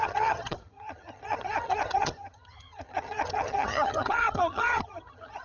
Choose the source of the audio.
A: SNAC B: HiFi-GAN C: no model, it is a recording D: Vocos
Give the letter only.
B